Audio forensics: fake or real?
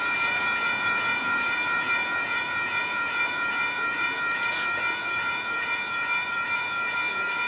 fake